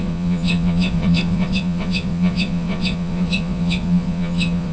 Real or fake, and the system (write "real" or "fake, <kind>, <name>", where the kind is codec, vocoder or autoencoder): fake, vocoder, Vocos